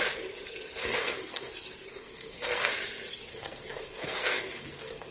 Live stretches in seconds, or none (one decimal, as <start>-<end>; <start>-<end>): 0.0-0.8; 1.5-1.9; 2.7-3.3